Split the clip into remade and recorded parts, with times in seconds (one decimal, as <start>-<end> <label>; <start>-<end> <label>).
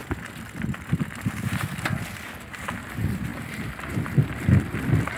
0.0-5.2 recorded